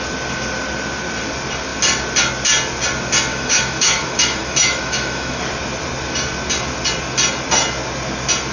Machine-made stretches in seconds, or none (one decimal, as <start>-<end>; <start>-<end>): 3.3-5.4